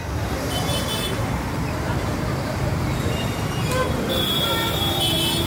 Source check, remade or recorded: remade